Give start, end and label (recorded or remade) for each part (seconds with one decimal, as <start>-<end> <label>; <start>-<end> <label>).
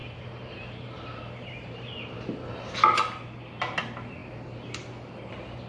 0.0-2.6 remade; 2.6-5.7 recorded